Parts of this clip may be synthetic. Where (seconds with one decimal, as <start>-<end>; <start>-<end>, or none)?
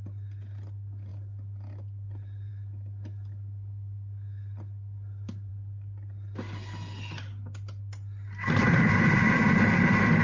none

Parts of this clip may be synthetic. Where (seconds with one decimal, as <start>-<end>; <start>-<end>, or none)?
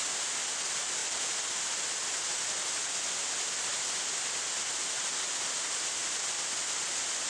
none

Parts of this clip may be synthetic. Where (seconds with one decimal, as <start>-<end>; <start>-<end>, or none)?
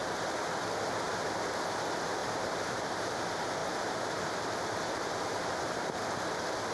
2.2-2.9; 3.6-6.1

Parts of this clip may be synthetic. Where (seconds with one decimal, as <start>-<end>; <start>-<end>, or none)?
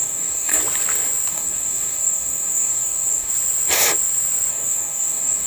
0.0-0.6; 1.3-3.3; 4.5-5.5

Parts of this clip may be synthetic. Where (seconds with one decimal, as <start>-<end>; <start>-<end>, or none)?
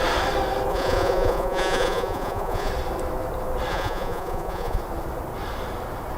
0.7-2.7; 3.7-4.8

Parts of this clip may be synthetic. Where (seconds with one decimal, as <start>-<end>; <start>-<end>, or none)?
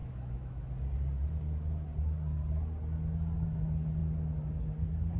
0.0-0.6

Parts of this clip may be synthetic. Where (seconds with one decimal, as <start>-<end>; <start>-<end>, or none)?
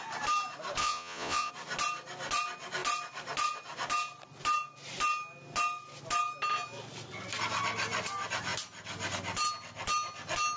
0.8-1.5